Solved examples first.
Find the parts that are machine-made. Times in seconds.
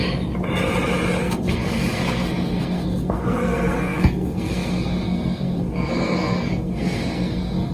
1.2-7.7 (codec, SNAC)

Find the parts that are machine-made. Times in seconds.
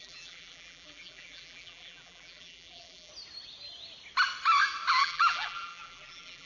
0.0-3.1 (vocoder, BigVGAN v2); 4.9-6.5